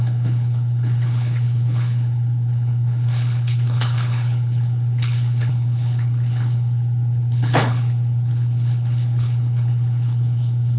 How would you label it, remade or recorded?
remade